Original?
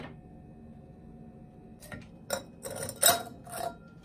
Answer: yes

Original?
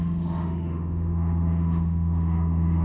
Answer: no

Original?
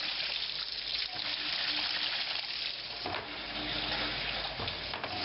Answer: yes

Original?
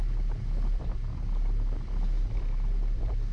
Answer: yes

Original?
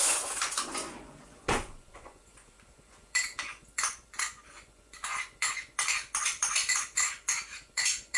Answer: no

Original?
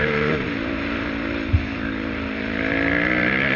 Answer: no